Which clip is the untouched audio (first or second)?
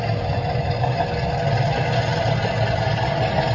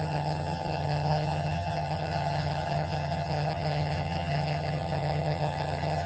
first